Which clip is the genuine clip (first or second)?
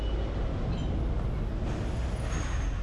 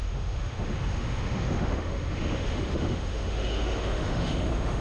first